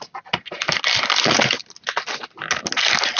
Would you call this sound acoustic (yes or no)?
yes